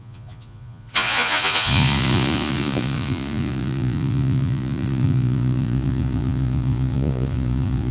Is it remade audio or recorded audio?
remade